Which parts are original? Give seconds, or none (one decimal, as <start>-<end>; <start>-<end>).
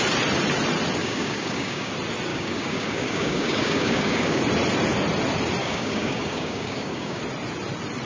0.0-1.0; 1.9-2.3; 4.4-5.6; 7.2-8.1